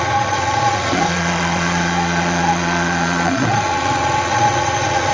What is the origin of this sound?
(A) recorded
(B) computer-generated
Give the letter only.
B